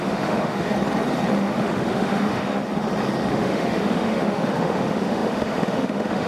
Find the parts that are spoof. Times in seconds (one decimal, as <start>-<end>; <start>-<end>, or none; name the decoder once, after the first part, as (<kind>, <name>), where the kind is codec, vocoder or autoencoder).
0.0-0.7 (autoencoder, DAC-VAE); 1.4-2.6; 3.3-6.3

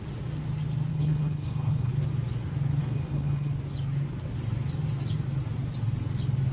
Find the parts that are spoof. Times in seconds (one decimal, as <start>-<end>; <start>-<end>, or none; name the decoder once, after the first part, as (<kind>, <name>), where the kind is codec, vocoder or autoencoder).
0.9-1.9 (codec, HILCodec); 2.8-3.5

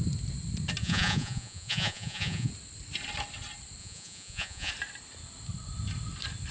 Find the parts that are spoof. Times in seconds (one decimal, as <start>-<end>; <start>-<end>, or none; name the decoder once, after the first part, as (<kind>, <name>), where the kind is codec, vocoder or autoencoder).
0.8-2.5 (vocoder, Vocos); 3.8-4.7

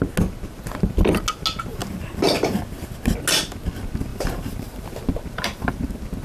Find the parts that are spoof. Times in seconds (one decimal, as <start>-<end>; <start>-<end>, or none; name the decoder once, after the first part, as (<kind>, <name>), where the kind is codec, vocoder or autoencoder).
1.8-2.6 (vocoder, BigVGAN v2); 4.1-5.7

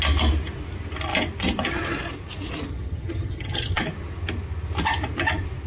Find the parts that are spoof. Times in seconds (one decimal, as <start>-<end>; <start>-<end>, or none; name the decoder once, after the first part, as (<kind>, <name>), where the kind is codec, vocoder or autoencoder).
2.7-3.8 (vocoder, HiFi-GAN)

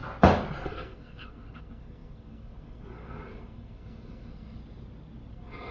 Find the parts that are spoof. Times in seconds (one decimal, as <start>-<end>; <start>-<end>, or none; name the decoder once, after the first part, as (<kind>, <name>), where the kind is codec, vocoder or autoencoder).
0.6-4.6 (codec, SNAC); 5.3-5.7

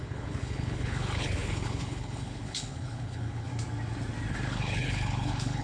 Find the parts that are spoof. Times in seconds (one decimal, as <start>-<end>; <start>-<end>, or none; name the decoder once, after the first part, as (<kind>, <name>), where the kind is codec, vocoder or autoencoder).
0.0-3.5 (codec, HILCodec); 4.3-5.6